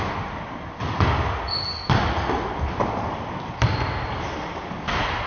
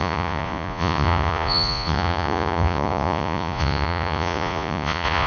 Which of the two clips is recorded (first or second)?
first